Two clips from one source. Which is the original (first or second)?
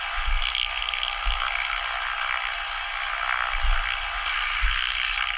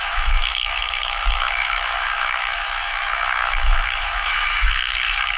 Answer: first